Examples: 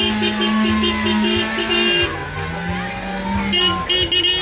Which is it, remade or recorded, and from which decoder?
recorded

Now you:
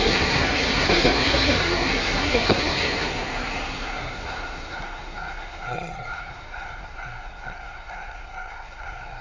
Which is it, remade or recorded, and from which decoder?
remade, codec, SNAC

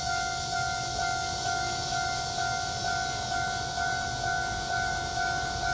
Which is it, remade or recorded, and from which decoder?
remade, autoencoder, DAC-VAE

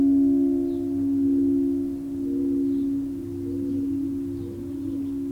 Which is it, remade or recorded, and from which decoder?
recorded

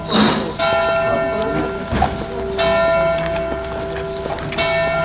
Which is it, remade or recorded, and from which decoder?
recorded